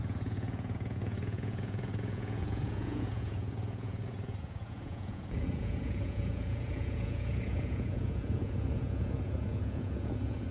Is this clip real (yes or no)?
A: no